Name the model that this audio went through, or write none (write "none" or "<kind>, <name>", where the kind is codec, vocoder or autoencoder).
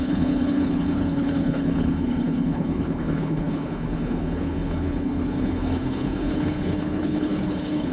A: codec, HILCodec